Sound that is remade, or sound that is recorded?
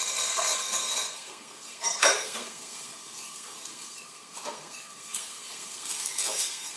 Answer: remade